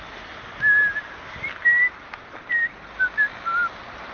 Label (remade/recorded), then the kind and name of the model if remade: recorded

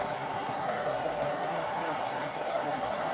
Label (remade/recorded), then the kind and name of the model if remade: remade, codec, SNAC